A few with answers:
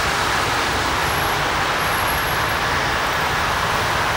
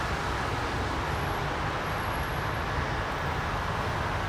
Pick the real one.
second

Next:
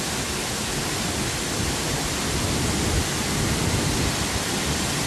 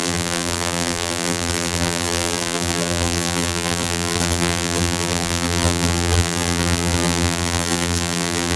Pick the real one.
first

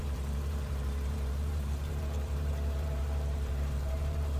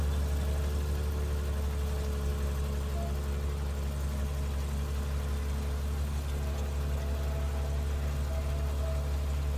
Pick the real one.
second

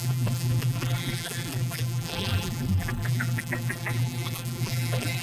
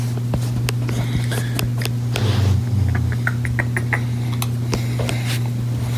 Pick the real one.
second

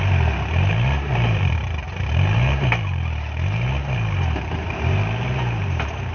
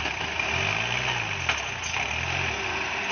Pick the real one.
second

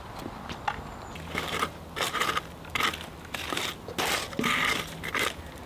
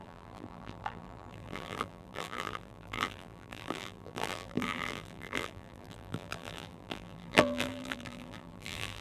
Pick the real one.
first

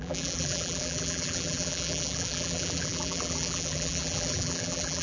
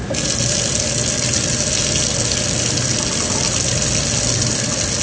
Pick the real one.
second